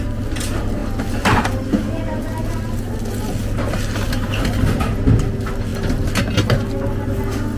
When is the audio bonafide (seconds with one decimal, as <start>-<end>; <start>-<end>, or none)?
0.0-7.6